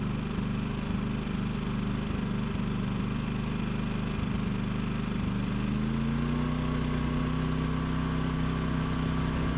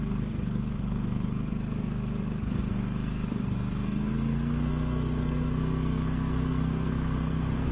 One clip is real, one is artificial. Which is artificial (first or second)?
second